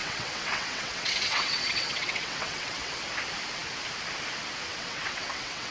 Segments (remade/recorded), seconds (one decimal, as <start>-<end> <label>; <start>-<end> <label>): 0.0-3.0 remade; 3.0-4.7 recorded; 4.7-5.7 remade